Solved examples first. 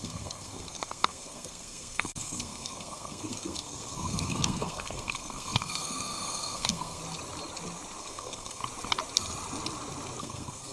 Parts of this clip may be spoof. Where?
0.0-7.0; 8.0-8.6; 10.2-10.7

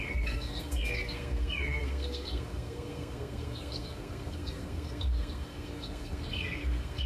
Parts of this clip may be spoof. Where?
0.0-7.1